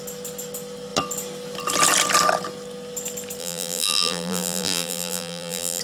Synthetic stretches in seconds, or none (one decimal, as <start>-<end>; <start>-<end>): 3.4-5.8